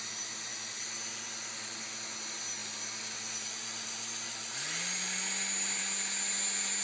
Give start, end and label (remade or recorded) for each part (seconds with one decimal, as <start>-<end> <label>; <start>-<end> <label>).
0.0-6.8 recorded